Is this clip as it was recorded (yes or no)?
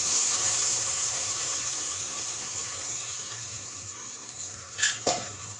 no